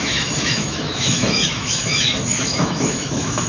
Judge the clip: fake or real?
fake